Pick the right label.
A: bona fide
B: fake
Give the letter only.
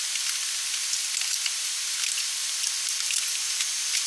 A